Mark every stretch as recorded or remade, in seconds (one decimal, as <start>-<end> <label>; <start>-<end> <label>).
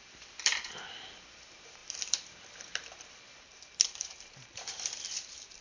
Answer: 0.0-5.6 remade